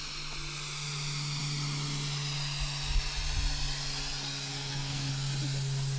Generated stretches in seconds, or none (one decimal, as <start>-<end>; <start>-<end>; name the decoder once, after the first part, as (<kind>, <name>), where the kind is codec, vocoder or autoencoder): 4.5-5.1 (codec, SNAC)